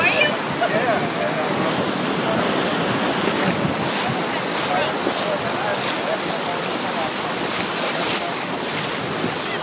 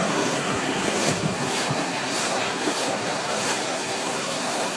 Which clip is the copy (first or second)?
second